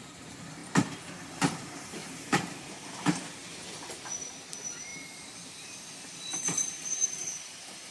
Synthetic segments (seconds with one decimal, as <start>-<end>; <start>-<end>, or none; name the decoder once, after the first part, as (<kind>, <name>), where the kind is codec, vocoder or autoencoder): 0.0-3.4 (vocoder, BigVGAN v2); 4.5-4.9; 6.4-7.9